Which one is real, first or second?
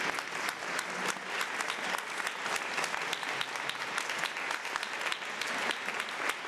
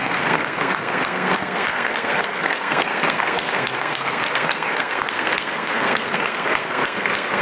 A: first